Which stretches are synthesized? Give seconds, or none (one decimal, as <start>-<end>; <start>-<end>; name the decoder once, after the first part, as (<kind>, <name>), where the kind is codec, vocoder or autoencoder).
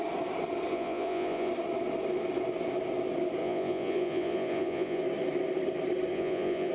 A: 0.7-1.5 (vocoder, Vocos); 3.4-5.0; 6.1-6.7